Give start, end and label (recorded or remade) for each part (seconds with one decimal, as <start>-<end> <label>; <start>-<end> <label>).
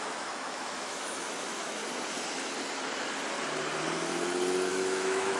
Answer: 0.0-1.8 remade; 1.8-4.7 recorded; 4.7-5.4 remade